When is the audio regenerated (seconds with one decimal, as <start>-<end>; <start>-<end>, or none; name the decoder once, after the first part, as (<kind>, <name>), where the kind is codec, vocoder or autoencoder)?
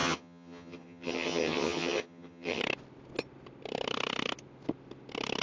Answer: 0.0-2.6 (vocoder, HiFi-GAN)